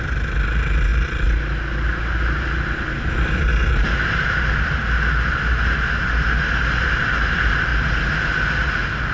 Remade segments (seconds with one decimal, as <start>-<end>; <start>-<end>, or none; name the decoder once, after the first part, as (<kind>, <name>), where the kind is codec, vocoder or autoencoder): none